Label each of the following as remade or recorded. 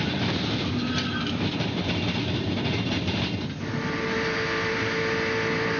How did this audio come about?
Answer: recorded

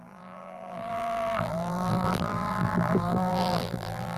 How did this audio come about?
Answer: remade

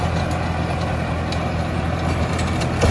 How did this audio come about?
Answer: recorded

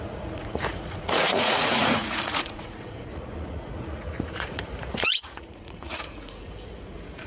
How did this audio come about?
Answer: remade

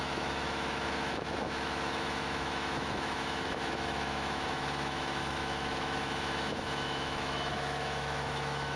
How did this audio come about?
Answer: remade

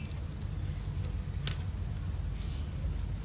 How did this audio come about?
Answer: recorded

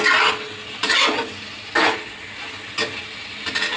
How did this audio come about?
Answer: recorded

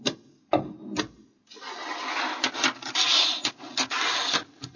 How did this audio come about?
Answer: recorded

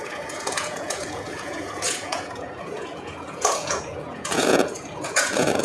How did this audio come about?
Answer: remade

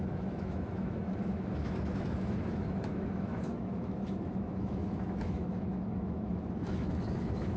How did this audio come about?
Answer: remade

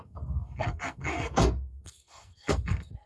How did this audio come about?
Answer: remade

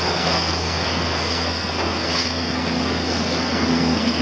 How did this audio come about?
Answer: remade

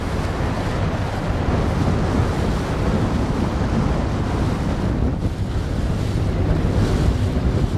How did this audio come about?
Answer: recorded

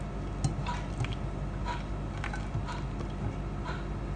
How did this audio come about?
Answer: recorded